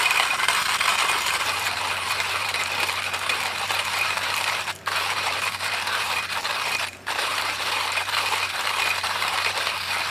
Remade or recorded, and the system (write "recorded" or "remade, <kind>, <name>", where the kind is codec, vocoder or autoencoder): remade, vocoder, BigVGAN v2